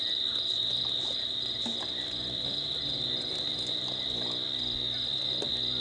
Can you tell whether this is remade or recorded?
recorded